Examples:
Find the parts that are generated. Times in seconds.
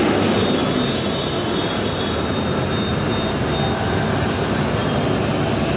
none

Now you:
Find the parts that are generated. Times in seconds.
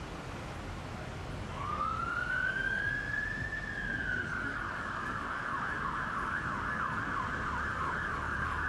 1.2-2.9 (codec, DAC); 4.3-7.0; 7.7-8.7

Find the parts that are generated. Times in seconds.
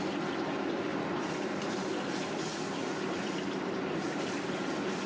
0.9-2.3 (vocoder, BigVGAN v2); 2.8-4.5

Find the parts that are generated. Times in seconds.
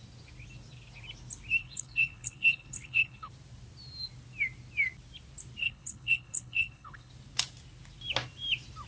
1.6-3.3 (codec, HILCodec); 5.6-7.1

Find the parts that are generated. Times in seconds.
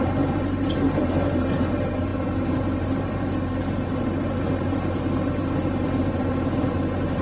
0.0-7.2 (vocoder, BigVGAN v2)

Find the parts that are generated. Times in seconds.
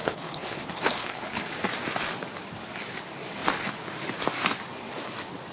0.0-1.4 (codec, HILCodec)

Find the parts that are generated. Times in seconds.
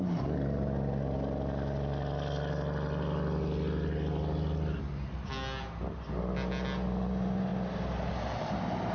none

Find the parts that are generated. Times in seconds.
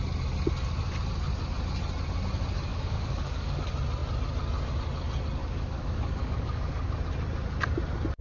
2.7-3.6 (codec, DAC); 5.4-6.9